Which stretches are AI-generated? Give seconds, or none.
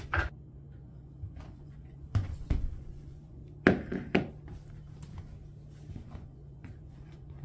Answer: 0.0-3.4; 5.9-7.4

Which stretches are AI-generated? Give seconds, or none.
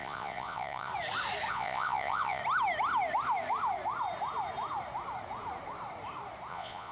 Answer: 0.0-0.9; 1.5-2.4; 6.5-6.9